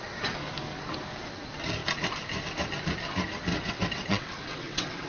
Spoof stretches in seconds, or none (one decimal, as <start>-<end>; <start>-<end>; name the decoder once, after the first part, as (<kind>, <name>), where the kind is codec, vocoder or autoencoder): 3.5-5.1 (vocoder, WaveNeXt)